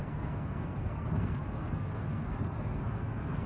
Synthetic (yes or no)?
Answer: yes